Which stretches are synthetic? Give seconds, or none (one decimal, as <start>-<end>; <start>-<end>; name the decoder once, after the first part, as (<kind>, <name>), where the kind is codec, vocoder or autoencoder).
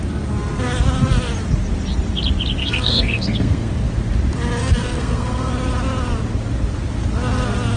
2.6-3.7 (codec, SNAC); 4.6-5.5